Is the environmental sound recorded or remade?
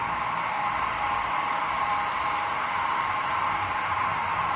recorded